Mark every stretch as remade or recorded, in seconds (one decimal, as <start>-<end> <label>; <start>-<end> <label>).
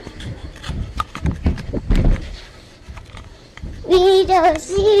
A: 0.0-0.4 recorded; 0.4-3.4 remade; 3.4-5.0 recorded